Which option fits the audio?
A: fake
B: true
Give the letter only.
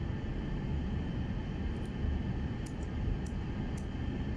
B